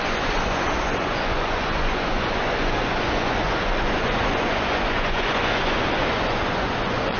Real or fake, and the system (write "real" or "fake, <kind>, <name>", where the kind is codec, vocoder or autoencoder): fake, vocoder, Vocos